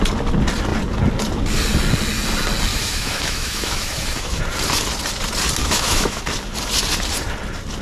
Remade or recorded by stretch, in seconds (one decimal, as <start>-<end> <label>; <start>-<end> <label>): 0.0-2.7 recorded; 2.7-4.4 remade; 4.4-5.6 recorded; 5.6-6.2 remade; 6.2-7.8 recorded